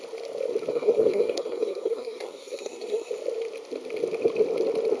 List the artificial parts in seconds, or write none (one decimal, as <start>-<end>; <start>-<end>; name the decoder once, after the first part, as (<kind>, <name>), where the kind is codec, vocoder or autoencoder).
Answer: 0.7-3.1 (codec, SNAC)